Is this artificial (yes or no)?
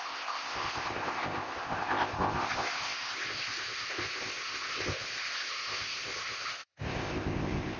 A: yes